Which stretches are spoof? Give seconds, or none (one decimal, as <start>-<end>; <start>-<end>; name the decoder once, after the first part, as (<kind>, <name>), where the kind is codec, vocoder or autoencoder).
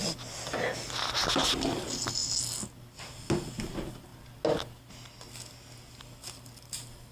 none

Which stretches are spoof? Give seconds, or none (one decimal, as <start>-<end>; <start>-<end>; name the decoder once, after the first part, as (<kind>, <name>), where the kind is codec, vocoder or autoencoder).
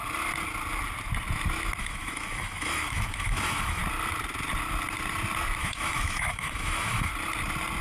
1.8-3.8 (autoencoder, DAC-VAE); 5.6-7.1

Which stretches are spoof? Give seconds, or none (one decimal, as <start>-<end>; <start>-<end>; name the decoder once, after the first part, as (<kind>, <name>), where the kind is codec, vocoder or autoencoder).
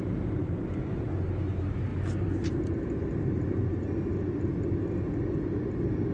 none